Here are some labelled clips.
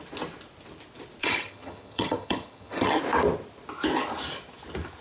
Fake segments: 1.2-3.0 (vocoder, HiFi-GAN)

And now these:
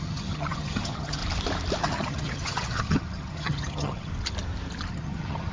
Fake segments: 0.0-1.2 (vocoder, HiFi-GAN); 1.8-4.1; 4.9-5.5